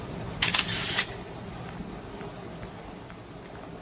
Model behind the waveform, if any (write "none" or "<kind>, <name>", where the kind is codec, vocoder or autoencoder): none